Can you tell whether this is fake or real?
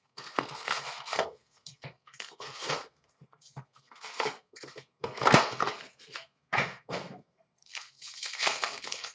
fake